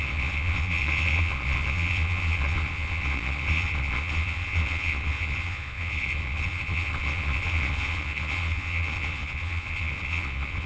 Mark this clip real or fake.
fake